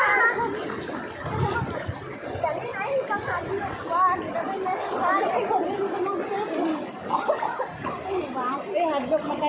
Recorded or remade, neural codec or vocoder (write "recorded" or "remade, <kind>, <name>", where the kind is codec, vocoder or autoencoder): recorded